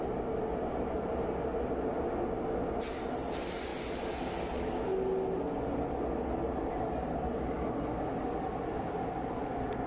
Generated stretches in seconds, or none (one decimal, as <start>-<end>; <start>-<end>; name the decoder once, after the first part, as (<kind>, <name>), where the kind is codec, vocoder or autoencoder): none